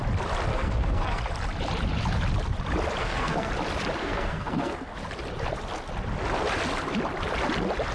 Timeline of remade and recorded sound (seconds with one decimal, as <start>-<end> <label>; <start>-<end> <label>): 0.0-0.5 recorded; 0.5-1.2 remade; 1.2-3.0 recorded; 3.0-3.5 remade; 3.5-4.0 recorded; 4.0-4.9 remade; 4.9-7.9 recorded